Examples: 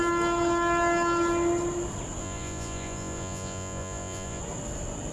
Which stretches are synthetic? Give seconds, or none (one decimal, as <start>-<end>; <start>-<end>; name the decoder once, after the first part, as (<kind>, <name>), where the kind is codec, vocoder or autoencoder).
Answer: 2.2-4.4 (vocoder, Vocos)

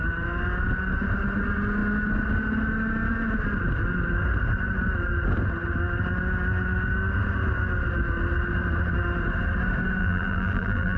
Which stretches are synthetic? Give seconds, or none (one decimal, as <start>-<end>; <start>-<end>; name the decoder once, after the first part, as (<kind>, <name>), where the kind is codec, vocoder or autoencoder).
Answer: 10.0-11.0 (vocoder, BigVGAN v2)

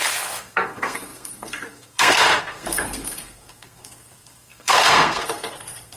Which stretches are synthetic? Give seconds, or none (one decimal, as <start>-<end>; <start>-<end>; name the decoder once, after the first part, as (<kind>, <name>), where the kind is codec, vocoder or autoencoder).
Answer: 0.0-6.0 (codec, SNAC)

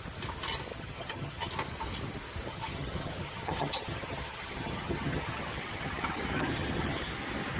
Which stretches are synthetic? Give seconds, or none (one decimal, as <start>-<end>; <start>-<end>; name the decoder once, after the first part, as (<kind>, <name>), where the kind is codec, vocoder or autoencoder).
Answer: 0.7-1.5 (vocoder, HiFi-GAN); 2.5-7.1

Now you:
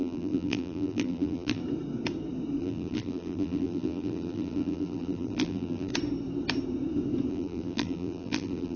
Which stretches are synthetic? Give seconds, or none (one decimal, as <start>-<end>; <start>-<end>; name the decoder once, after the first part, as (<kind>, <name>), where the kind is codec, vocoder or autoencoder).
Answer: 0.0-1.6 (vocoder, BigVGAN v2); 2.6-5.9; 7.3-8.8